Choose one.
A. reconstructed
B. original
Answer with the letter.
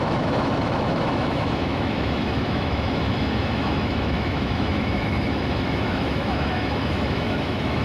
A